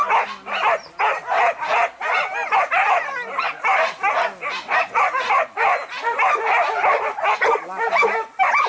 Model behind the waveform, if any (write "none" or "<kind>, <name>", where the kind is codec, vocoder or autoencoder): none